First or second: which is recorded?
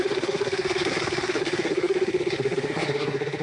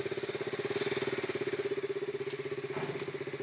second